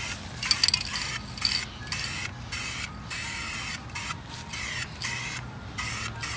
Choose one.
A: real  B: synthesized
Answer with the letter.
A